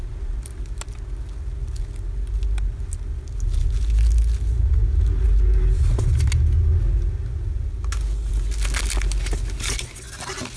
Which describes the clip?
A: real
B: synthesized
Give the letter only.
A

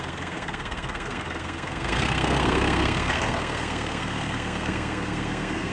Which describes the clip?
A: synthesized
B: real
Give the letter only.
A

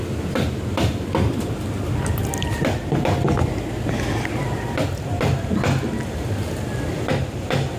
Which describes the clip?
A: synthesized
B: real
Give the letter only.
B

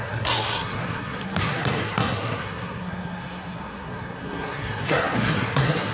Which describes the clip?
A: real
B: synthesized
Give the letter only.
B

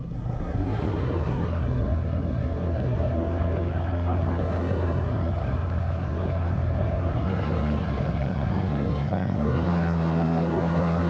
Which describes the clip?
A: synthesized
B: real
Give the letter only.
A